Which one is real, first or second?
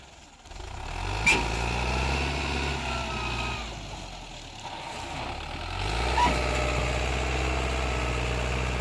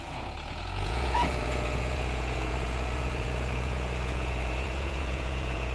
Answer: first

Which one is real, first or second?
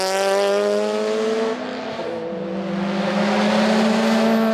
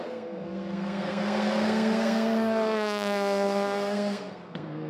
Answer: first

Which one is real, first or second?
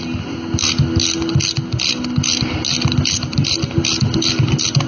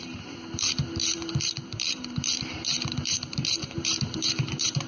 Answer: first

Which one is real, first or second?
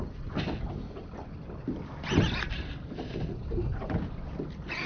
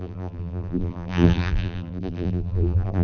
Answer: first